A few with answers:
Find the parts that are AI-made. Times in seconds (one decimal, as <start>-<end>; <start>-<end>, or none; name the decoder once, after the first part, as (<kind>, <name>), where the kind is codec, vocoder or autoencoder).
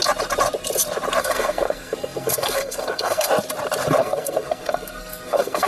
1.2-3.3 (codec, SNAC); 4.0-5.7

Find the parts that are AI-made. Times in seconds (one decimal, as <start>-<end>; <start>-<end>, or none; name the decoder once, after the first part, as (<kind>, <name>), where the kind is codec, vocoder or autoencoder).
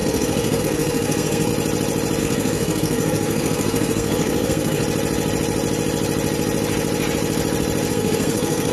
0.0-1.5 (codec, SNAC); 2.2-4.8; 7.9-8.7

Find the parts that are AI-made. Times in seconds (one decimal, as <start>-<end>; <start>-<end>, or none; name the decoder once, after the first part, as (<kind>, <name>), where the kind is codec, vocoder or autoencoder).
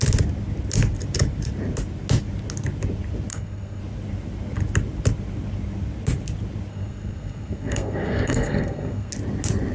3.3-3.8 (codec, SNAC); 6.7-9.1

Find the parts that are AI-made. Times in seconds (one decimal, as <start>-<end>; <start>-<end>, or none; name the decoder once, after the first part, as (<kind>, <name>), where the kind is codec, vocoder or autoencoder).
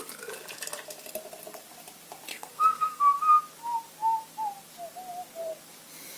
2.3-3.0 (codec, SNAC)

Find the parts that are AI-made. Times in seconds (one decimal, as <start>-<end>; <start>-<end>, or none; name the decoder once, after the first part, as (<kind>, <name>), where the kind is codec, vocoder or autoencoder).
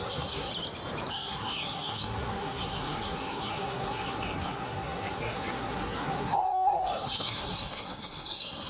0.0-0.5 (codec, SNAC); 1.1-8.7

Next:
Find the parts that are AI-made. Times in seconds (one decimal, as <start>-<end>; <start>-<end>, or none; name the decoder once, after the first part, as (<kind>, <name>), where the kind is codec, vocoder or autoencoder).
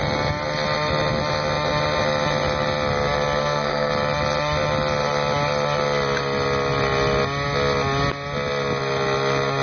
3.4-3.9 (codec, SNAC)